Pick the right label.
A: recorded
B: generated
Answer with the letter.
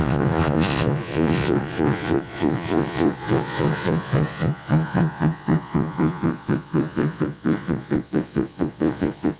B